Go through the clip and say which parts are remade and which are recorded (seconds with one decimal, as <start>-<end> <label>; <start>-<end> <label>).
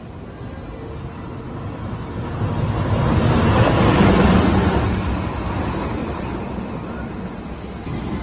0.0-6.0 recorded; 6.0-7.2 remade; 7.2-8.2 recorded